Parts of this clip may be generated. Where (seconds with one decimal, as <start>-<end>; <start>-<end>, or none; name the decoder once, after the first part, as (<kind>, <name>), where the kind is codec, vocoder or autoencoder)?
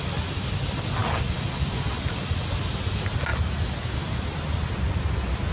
none